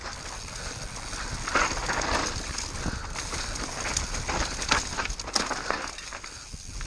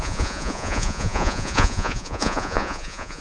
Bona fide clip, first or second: first